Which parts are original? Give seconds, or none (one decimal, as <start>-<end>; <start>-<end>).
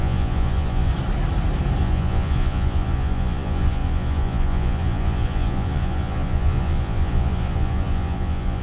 0.9-1.8